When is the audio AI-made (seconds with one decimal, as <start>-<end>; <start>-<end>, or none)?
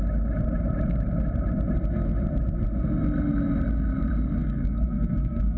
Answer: 4.4-5.6